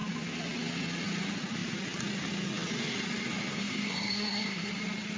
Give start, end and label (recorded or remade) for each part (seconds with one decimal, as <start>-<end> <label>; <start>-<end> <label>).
0.0-3.5 recorded; 3.5-4.7 remade; 4.7-5.2 recorded